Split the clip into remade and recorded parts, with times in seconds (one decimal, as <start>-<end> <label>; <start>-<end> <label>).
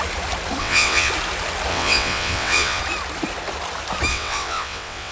0.0-0.6 recorded; 0.6-1.1 remade; 1.1-1.7 recorded; 1.7-2.8 remade; 2.8-4.1 recorded; 4.1-5.1 remade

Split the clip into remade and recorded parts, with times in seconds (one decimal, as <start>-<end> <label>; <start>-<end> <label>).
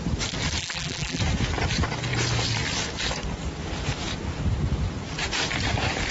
0.0-0.6 recorded; 0.6-1.2 remade; 1.2-6.1 recorded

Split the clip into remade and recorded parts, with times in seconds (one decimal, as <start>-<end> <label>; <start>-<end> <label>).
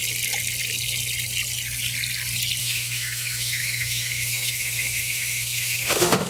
0.0-2.6 recorded; 2.6-6.3 remade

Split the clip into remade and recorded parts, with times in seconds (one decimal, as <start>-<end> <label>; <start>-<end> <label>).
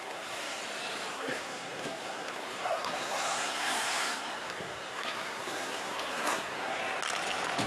0.0-0.6 remade; 0.6-1.1 recorded; 1.1-6.8 remade; 6.8-7.7 recorded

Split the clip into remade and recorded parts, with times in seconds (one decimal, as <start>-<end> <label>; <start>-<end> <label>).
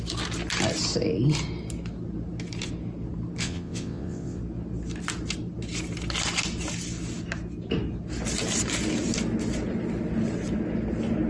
0.0-3.4 recorded; 3.4-4.4 remade; 4.4-11.3 recorded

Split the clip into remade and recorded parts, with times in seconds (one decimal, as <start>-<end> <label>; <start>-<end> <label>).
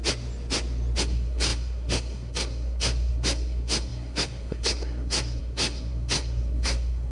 0.0-1.0 recorded; 1.0-7.1 remade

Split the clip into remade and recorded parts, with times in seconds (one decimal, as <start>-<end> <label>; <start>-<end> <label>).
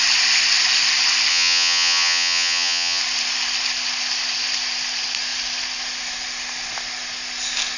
0.0-1.3 recorded; 1.3-3.0 remade; 3.0-7.8 recorded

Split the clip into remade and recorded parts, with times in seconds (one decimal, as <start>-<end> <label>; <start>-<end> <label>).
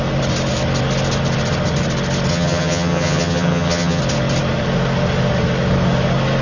0.0-2.3 recorded; 2.3-4.0 remade; 4.0-6.4 recorded